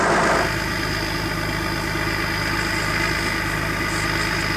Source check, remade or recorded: recorded